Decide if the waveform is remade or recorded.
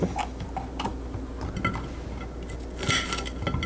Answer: recorded